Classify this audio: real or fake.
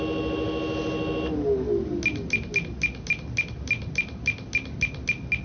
real